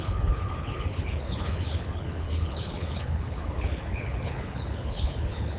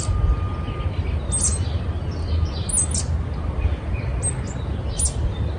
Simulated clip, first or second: first